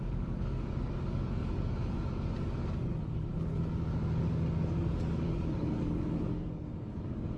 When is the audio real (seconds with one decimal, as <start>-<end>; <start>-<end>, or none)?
none